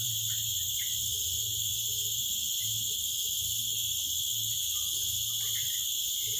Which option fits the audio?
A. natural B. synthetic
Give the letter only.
A